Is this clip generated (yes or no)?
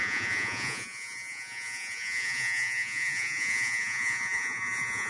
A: yes